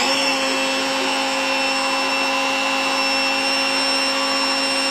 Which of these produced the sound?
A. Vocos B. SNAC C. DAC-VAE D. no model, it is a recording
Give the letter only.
D